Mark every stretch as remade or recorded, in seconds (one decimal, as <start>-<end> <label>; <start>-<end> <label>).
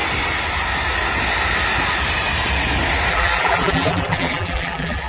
0.0-3.1 recorded; 3.1-5.1 remade